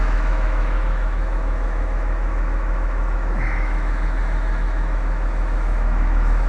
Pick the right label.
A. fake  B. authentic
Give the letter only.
A